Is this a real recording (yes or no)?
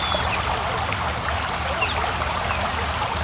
yes